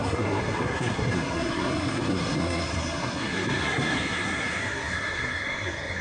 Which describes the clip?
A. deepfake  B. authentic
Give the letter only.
A